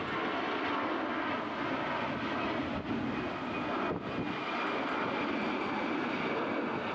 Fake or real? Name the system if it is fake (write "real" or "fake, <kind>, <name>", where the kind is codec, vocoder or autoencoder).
real